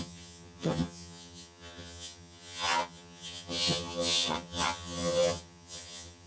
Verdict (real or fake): fake